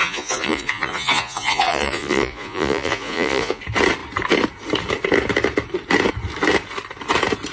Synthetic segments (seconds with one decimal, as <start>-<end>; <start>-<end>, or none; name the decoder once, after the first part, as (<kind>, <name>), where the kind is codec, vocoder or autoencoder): 0.0-3.6 (vocoder, Vocos)